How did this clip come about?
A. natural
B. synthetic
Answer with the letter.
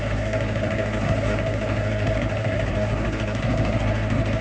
B